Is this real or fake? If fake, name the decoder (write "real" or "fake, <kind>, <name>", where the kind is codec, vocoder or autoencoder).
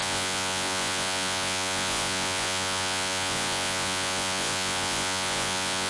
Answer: fake, vocoder, Vocos